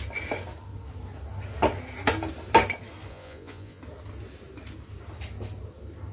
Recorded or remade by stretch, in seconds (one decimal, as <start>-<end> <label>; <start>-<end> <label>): 0.0-3.1 recorded; 3.1-3.8 remade; 3.8-6.1 recorded